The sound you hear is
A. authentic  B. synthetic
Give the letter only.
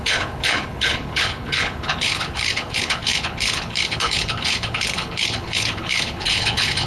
B